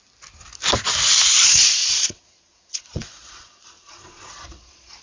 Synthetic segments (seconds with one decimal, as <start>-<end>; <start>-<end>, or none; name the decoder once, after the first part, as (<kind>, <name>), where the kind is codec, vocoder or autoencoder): 1.8-5.0 (vocoder, Vocos)